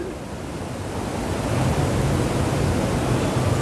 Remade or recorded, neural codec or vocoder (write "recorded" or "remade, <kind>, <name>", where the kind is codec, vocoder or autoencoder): recorded